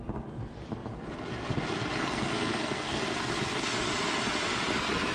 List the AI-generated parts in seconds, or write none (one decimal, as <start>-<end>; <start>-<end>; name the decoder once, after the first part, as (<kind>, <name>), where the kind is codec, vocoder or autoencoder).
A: 2.0-3.0 (codec, SNAC)